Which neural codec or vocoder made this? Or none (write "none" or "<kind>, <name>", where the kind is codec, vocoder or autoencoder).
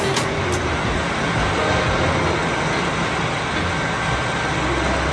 none